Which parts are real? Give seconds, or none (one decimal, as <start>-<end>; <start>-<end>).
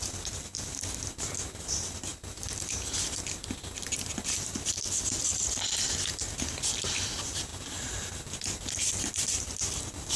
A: 0.0-10.2